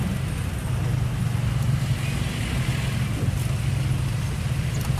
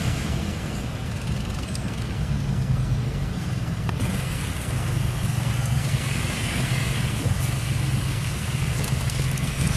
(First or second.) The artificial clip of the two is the second